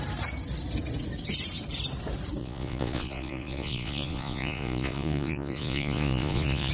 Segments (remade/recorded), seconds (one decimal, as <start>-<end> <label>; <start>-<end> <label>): 0.0-2.4 recorded; 2.4-6.7 remade